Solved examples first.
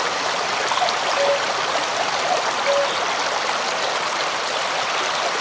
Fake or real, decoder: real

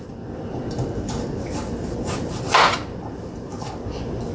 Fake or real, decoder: real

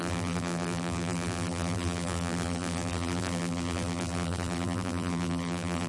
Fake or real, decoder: fake, vocoder, BigVGAN v2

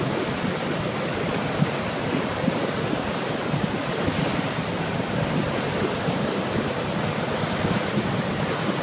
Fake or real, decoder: real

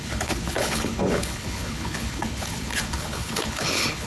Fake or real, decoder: fake, codec, HILCodec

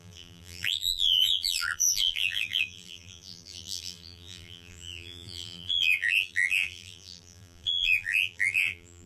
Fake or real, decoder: fake, vocoder, BigVGAN v2